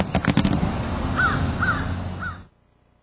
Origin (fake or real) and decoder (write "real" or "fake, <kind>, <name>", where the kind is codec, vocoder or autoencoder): real